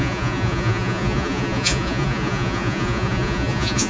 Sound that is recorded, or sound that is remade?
remade